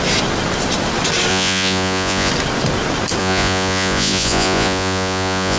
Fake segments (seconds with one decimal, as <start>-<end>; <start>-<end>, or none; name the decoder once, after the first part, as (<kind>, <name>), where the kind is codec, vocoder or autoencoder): 1.3-2.3 (vocoder, Vocos); 3.2-5.6